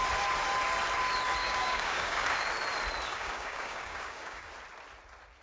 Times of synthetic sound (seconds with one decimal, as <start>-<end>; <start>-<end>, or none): 1.4-2.5; 3.1-4.5